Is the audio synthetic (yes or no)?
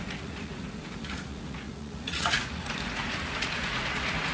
yes